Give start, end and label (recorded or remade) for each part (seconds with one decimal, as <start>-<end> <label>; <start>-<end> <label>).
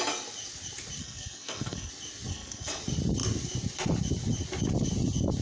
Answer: 0.0-1.0 recorded; 1.0-1.9 remade; 1.9-2.3 recorded; 2.3-2.8 remade; 2.8-5.4 recorded